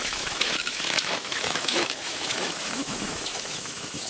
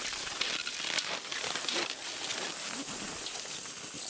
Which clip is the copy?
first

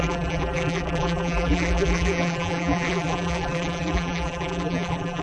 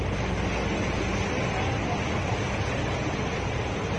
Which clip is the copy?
first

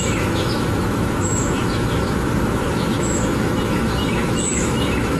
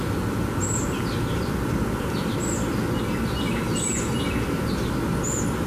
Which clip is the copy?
first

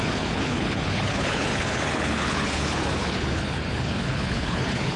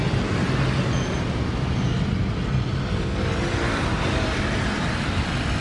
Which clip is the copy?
first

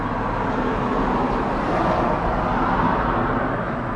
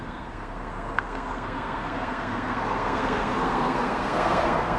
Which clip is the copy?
second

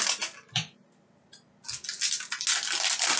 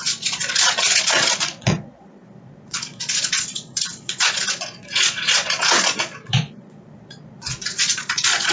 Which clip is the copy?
second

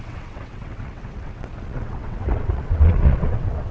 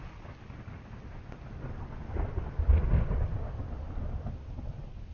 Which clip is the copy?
first